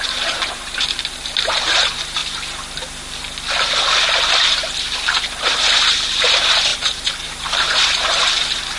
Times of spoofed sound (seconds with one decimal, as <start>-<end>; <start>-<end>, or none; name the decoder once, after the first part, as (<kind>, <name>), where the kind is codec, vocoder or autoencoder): 0.0-2.2 (vocoder, BigVGAN v2); 5.4-8.8